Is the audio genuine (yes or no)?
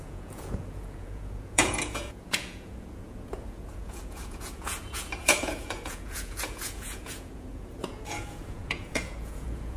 no